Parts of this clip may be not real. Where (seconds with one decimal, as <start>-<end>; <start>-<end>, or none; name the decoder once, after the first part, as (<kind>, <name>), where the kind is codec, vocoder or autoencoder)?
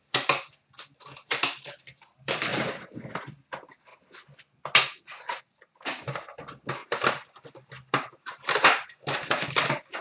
0.0-3.9 (vocoder, BigVGAN v2); 5.4-6.8; 7.7-10.0